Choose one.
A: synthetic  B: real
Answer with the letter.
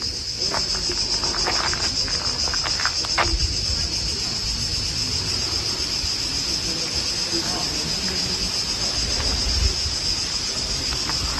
B